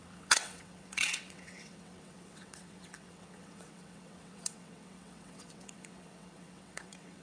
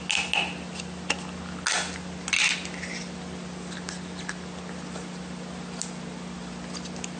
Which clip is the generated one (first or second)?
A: first